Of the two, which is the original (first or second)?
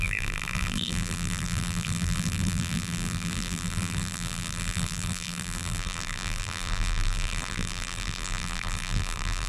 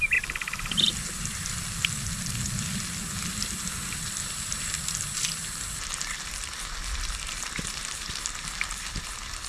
second